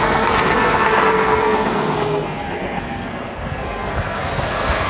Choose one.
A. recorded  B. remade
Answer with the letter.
B